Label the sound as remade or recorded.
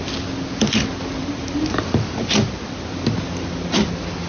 recorded